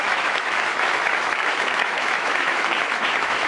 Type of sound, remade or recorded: remade